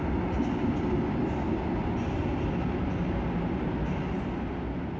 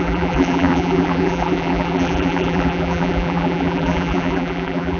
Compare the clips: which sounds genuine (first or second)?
first